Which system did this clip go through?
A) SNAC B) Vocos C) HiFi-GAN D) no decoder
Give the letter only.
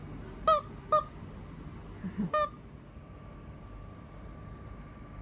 D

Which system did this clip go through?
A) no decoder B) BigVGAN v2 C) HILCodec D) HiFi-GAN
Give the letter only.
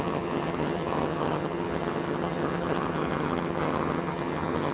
D